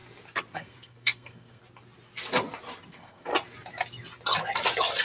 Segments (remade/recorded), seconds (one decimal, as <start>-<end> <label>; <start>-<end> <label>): 0.0-0.5 recorded; 0.5-1.6 remade; 1.6-2.9 recorded; 2.9-3.3 remade; 3.3-5.0 recorded